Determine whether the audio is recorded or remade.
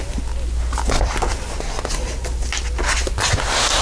recorded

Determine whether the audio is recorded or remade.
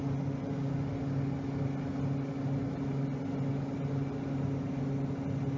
recorded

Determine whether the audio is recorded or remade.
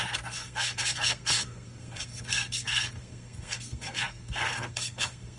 remade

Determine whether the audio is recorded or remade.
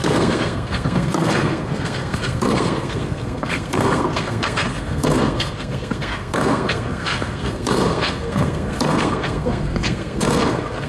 remade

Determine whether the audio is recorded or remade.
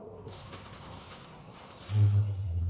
remade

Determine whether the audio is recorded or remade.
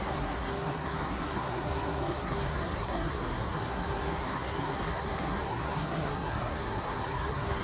remade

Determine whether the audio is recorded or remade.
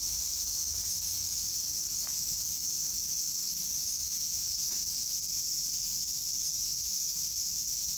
remade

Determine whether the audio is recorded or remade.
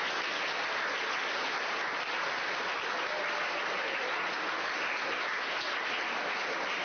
recorded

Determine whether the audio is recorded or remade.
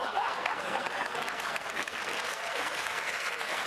remade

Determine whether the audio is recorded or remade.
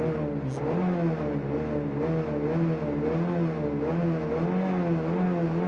recorded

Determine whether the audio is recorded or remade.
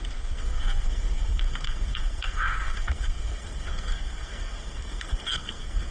remade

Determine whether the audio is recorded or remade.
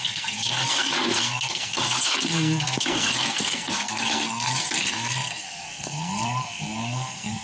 remade